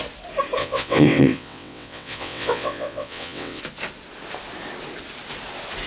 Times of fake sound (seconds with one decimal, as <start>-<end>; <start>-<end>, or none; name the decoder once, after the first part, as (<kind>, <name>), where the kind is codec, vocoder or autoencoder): 0.6-3.6 (vocoder, WaveNeXt)